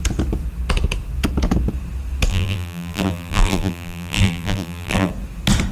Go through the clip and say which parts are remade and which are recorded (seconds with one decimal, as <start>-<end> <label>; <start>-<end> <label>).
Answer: 0.0-2.3 recorded; 2.3-5.1 remade; 5.1-5.7 recorded